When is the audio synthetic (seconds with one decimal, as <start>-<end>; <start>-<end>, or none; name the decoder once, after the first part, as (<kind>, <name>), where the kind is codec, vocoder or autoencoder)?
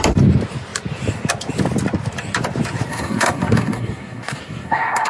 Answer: 2.9-5.1 (codec, SNAC)